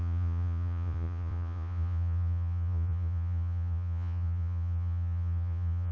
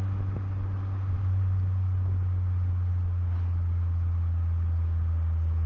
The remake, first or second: first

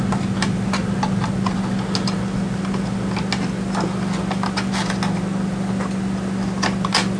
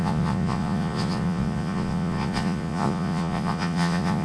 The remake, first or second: second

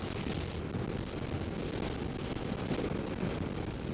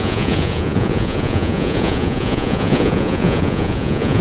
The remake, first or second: second